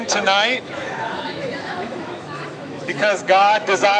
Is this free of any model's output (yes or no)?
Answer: no